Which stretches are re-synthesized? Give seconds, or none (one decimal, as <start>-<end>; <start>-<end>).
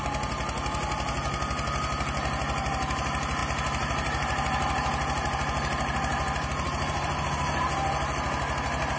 none